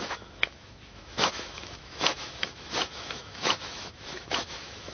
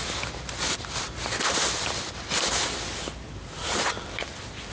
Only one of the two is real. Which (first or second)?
second